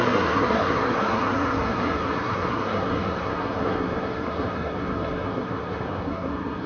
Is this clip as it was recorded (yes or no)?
no